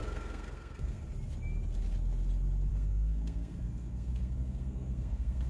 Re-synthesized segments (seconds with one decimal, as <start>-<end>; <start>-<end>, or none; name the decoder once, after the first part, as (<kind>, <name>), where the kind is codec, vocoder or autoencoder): 0.0-1.0 (codec, SNAC); 2.7-5.5

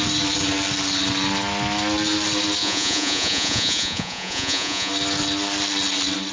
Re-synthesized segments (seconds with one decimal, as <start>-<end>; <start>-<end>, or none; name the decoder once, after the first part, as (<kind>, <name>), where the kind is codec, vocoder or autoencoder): 2.6-4.9 (vocoder, Vocos)